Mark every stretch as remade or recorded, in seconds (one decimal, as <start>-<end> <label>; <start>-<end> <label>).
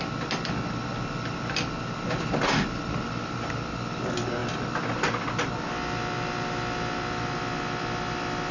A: 0.0-8.5 recorded